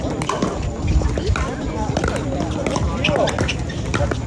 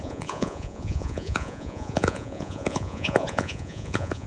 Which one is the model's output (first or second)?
second